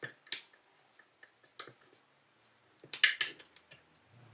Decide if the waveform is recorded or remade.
recorded